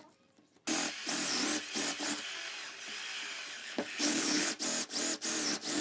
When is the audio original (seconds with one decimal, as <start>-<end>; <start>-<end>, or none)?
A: 0.0-3.6; 4.5-5.8